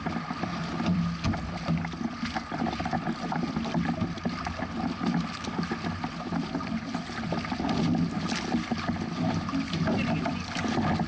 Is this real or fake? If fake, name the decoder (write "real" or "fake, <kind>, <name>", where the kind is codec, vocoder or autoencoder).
real